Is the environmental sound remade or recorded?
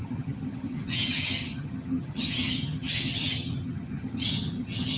remade